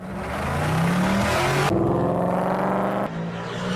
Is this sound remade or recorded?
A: recorded